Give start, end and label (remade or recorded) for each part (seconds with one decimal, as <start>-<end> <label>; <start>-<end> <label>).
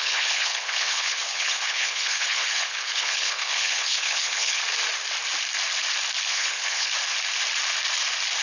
0.0-4.6 remade; 4.6-6.3 recorded; 6.3-6.9 remade; 6.9-8.4 recorded